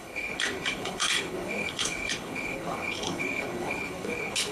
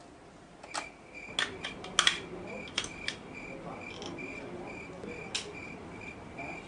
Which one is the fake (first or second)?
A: first